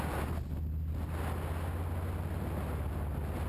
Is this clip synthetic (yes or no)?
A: no